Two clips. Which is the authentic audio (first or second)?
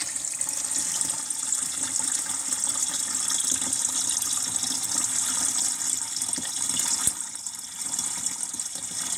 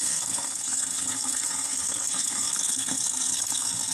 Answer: first